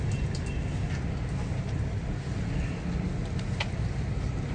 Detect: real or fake real